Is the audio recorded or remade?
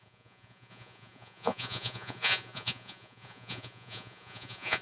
remade